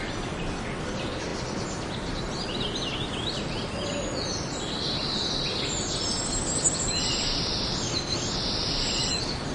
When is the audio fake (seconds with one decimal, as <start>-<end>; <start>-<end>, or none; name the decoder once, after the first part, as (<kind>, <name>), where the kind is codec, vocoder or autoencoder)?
none